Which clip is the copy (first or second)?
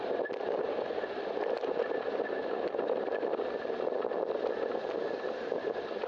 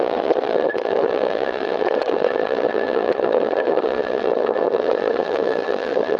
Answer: second